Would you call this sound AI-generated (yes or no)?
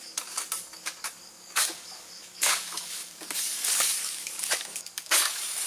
yes